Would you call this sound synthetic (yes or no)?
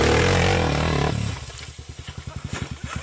no